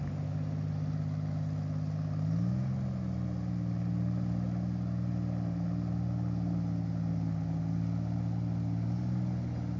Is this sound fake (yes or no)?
no